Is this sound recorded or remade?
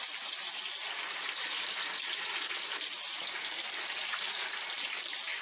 recorded